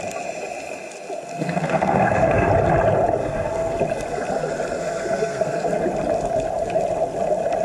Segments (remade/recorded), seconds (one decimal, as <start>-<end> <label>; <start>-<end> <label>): 0.0-1.3 recorded; 1.3-2.5 remade; 2.5-3.2 recorded; 3.2-3.8 remade; 3.8-4.8 recorded; 4.8-5.7 remade; 5.7-7.6 recorded